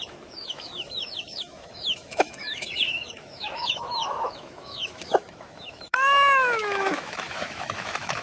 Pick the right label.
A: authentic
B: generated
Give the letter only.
B